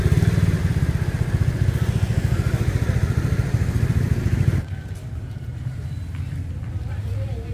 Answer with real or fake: real